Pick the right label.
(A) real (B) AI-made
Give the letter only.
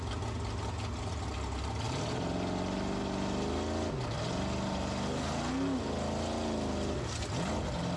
A